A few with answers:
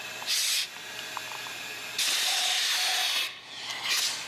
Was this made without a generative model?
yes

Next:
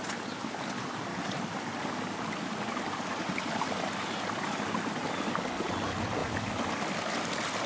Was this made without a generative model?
yes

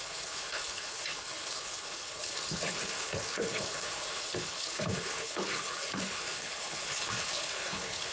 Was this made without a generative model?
no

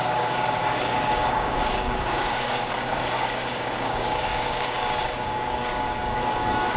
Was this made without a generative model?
no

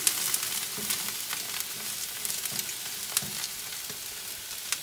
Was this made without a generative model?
yes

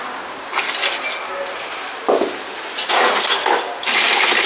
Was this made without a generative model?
yes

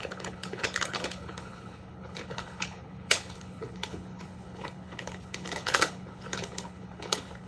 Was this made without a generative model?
no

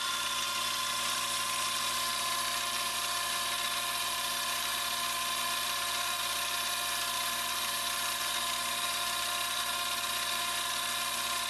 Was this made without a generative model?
yes